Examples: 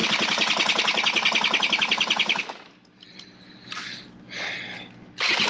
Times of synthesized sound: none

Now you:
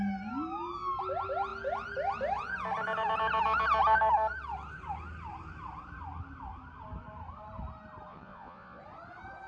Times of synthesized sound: 8.1-8.8 (vocoder, Vocos)

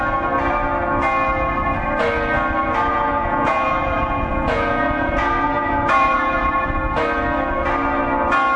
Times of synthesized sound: 2.9-6.5 (vocoder, Vocos)

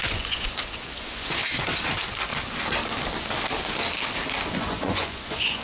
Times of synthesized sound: 0.0-1.4 (vocoder, Vocos); 4.5-5.6

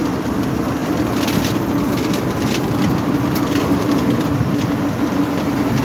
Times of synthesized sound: none

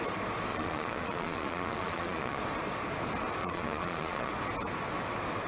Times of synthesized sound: 0.5-2.4 (vocoder, Vocos); 3.4-4.3